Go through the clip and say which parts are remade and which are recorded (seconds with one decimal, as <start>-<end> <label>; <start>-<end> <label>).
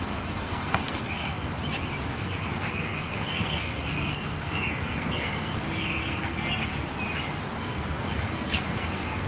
0.0-1.5 remade; 1.5-2.0 recorded; 2.0-6.7 remade; 6.7-7.6 recorded; 7.6-9.3 remade